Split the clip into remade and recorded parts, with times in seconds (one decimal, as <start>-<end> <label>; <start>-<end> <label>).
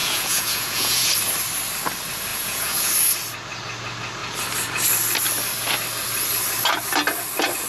0.0-1.1 remade; 1.1-2.3 recorded; 2.3-2.9 remade; 2.9-7.7 recorded